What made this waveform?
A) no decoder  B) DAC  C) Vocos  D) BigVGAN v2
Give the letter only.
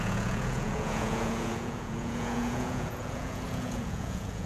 C